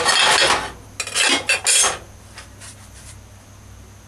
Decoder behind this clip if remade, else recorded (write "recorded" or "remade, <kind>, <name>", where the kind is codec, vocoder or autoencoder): recorded